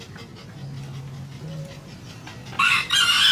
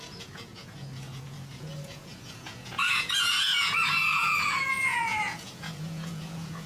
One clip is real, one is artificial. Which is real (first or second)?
first